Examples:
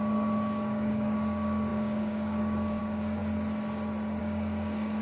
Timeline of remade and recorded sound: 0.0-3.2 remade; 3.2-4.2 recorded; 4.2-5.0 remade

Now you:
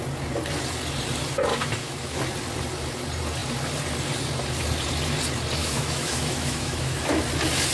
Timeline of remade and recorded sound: 0.0-1.5 recorded; 1.5-2.2 remade; 2.2-5.6 recorded; 5.6-7.2 remade; 7.2-7.7 recorded

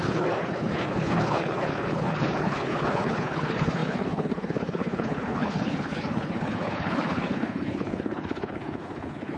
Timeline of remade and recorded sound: 0.0-9.4 remade

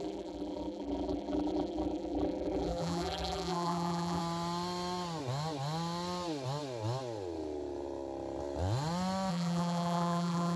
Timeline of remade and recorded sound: 0.0-4.2 remade; 4.2-9.3 recorded; 9.3-10.6 remade

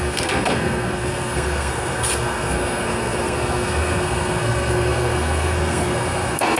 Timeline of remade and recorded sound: 0.0-6.6 remade

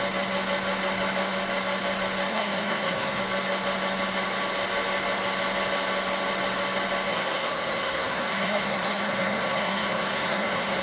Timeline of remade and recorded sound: 0.0-2.3 recorded; 2.3-3.2 remade; 3.2-7.1 recorded; 7.1-10.8 remade

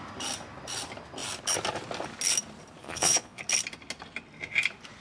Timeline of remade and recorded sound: 0.0-2.8 recorded; 2.8-3.4 remade; 3.4-5.0 recorded

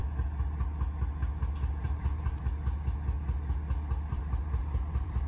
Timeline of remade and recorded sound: 0.0-1.8 recorded; 1.8-2.4 remade; 2.4-4.1 recorded; 4.1-5.3 remade